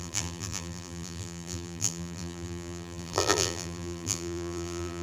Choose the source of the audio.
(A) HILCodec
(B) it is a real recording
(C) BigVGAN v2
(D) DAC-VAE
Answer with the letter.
C